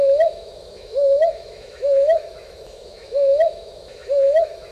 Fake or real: fake